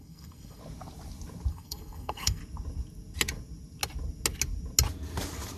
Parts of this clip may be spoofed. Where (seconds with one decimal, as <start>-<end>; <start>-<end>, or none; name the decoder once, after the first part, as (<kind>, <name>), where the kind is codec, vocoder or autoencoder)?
0.0-0.6 (codec, SNAC); 1.5-2.4